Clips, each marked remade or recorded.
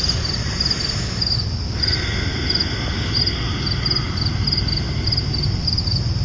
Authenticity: recorded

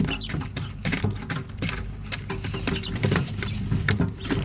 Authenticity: recorded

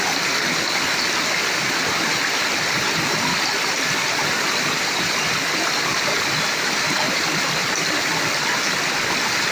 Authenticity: recorded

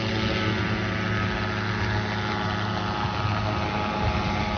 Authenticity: recorded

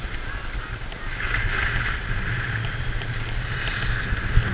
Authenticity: recorded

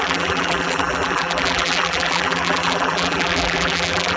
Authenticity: remade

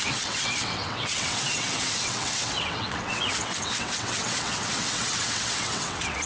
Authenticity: remade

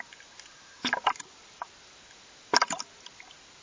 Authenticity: recorded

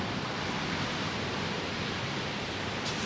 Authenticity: recorded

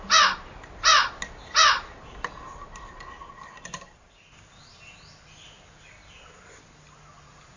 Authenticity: recorded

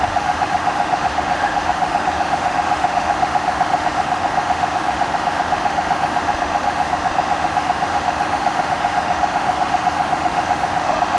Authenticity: remade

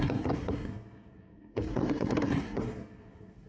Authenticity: remade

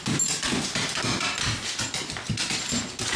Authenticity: recorded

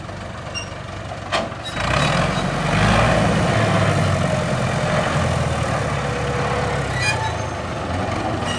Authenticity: recorded